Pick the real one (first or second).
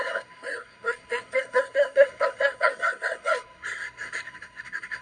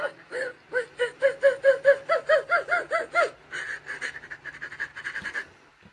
second